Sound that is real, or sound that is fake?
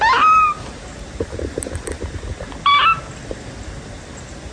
real